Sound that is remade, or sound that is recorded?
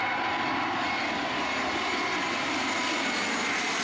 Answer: recorded